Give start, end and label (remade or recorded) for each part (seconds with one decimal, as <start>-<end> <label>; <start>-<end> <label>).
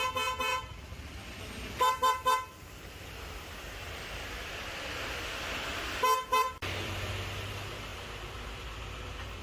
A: 0.0-0.5 recorded; 0.5-4.5 remade; 4.5-6.3 recorded; 6.3-7.1 remade; 7.1-9.4 recorded